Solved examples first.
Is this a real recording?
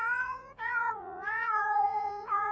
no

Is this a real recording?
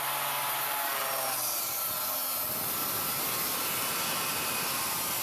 yes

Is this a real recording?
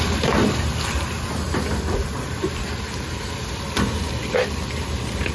no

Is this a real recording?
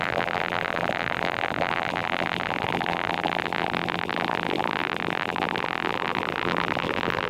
no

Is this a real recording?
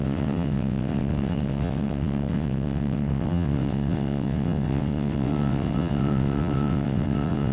no